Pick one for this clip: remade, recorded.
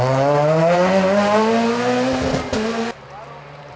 recorded